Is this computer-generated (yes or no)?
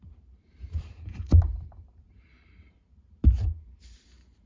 yes